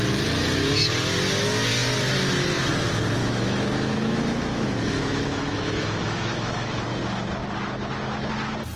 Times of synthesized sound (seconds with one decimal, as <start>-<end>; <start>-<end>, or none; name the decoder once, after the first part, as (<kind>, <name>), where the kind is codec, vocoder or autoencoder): 3.2-6.8 (autoencoder, DAC-VAE)